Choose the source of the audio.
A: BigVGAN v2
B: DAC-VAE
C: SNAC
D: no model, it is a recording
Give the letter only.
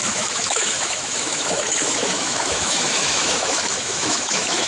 B